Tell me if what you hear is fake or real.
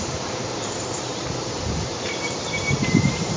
fake